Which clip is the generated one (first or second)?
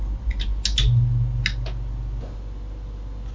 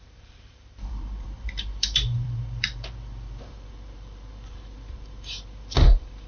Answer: second